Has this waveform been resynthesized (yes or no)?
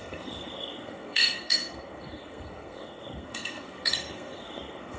yes